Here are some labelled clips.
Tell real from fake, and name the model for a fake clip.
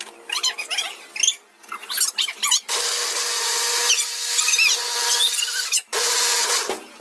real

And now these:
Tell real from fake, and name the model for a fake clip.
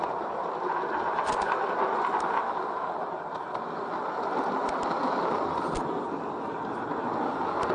real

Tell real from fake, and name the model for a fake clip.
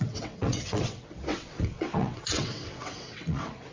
fake, vocoder, WaveNeXt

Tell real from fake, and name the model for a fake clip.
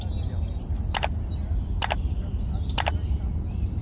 real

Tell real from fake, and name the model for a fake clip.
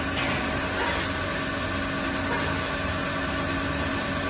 real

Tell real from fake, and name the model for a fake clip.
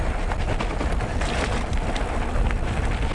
real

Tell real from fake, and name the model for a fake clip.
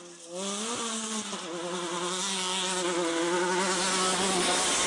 real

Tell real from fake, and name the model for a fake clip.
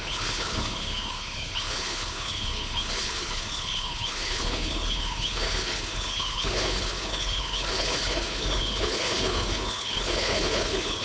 fake, codec, HILCodec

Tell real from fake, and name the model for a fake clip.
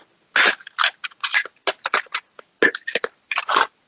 real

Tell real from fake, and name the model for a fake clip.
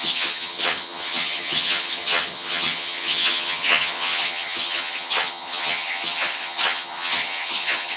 fake, vocoder, HiFi-GAN